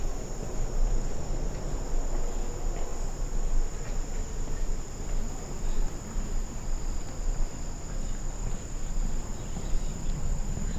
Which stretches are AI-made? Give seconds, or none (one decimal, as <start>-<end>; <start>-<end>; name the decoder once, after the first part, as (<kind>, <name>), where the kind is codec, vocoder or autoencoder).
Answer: none